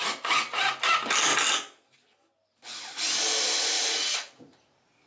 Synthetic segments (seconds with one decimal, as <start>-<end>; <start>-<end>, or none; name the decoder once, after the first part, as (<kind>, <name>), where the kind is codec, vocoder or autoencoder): 0.0-0.5 (vocoder, Vocos); 3.6-5.1